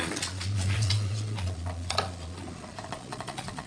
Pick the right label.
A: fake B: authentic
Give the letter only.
A